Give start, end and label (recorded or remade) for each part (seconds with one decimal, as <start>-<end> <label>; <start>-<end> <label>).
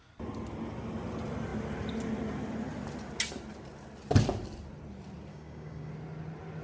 0.0-5.3 recorded; 5.3-5.9 remade; 5.9-6.6 recorded